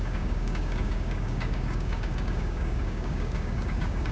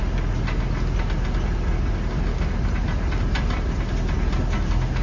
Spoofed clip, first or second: first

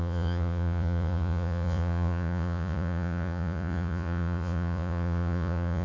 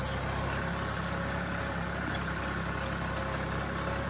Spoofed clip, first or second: first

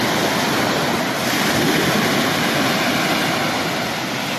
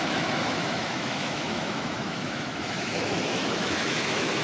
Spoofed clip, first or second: second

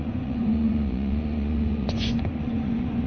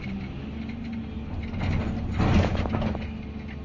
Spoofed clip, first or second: first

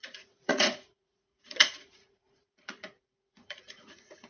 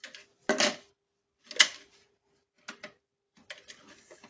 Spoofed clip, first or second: first